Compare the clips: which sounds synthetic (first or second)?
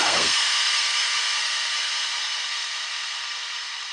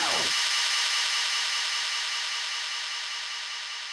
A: first